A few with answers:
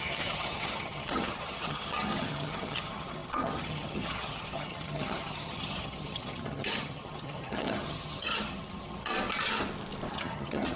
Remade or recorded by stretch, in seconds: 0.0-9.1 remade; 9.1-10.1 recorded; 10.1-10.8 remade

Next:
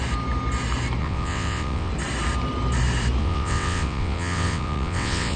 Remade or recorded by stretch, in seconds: 0.0-1.0 recorded; 1.0-1.9 remade; 1.9-3.2 recorded; 3.2-5.4 remade

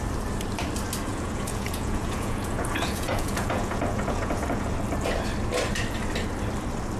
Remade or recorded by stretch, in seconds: 0.0-1.1 recorded; 1.1-4.7 remade; 4.7-7.0 recorded

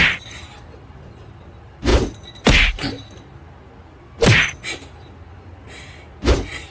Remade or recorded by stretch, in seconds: 0.0-6.7 recorded

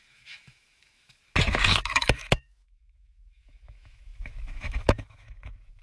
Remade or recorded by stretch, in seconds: 0.0-1.2 remade; 1.2-1.7 recorded; 1.7-5.8 remade

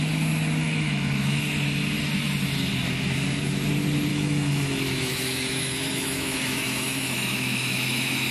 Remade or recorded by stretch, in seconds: 0.0-0.6 recorded; 0.6-1.4 remade; 1.4-4.1 recorded; 4.1-8.3 remade

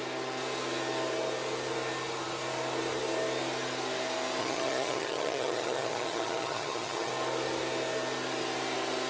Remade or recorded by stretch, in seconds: 0.0-4.4 recorded; 4.4-7.1 remade; 7.1-9.1 recorded